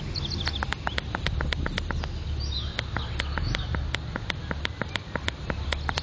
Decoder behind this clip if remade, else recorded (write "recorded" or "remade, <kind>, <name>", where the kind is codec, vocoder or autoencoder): recorded